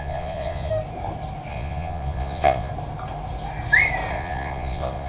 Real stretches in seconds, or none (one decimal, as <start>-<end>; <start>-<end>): 0.7-1.5; 2.7-4.1